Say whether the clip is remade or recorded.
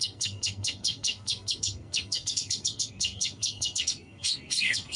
remade